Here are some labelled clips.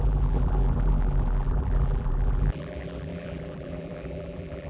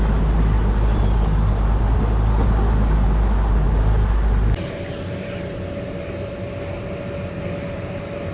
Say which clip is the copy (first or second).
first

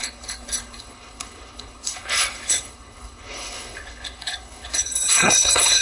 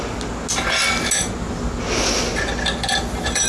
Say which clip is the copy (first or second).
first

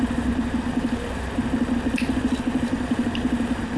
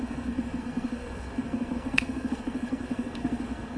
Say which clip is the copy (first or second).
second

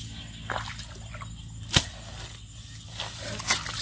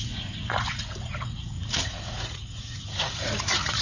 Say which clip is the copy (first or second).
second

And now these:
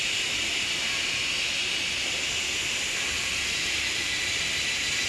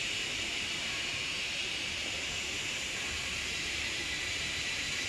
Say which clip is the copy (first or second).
second